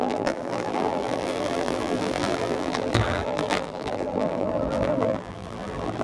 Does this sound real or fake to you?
fake